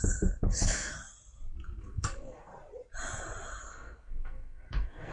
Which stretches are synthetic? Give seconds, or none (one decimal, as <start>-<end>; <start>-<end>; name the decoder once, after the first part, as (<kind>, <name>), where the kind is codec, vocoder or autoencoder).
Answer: 0.0-0.9 (codec, SNAC); 1.8-2.5; 3.6-5.1